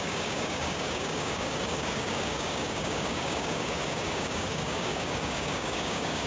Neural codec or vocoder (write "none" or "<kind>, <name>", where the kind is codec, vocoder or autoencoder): codec, DAC